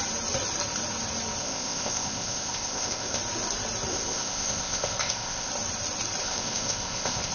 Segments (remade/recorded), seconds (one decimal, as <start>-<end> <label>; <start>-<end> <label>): 0.0-1.4 recorded; 1.4-3.2 remade; 3.2-3.9 recorded; 3.9-5.5 remade; 5.5-6.2 recorded; 6.2-7.3 remade